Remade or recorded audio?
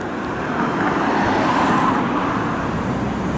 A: recorded